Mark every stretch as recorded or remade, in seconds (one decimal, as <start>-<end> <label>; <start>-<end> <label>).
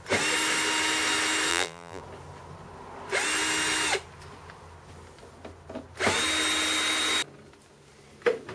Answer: 0.0-1.5 recorded; 1.5-2.0 remade; 2.0-8.5 recorded